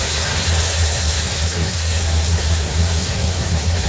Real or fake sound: fake